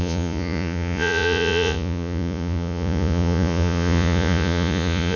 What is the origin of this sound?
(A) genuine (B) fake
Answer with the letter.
B